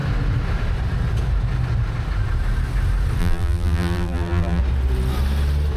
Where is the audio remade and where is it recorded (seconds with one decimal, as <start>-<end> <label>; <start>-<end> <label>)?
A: 0.0-3.2 recorded; 3.2-4.6 remade; 4.6-5.8 recorded